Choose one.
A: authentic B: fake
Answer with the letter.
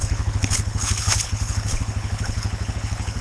B